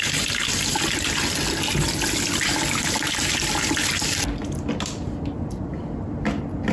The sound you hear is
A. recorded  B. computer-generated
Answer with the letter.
A